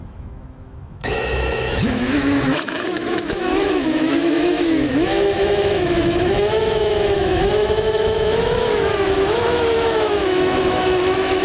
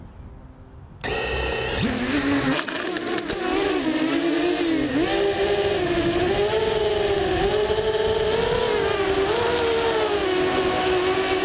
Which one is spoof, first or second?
first